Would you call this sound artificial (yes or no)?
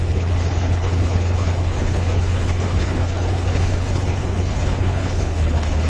yes